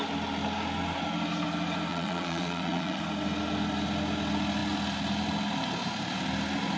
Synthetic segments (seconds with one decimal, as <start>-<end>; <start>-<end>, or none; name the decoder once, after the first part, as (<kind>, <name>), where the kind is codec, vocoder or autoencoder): 1.9-3.0 (vocoder, Vocos)